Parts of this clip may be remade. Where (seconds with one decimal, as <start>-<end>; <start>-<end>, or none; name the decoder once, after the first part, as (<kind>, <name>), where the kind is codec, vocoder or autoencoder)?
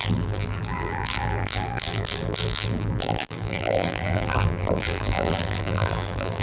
0.0-6.4 (vocoder, BigVGAN v2)